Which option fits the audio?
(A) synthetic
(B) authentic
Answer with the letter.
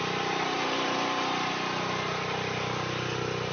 A